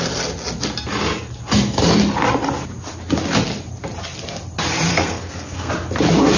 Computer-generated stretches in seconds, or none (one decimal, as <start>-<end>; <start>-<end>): 4.9-5.7